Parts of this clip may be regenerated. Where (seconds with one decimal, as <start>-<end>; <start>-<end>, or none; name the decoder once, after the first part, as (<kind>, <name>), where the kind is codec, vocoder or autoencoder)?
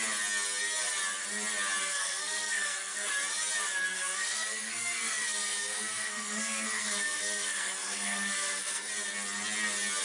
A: 1.8-3.1 (codec, SNAC); 3.9-8.9